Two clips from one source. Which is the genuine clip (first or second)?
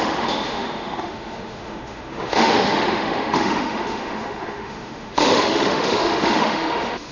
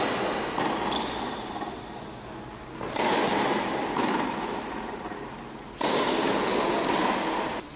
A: second